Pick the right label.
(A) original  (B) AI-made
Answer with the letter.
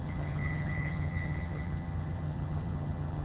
B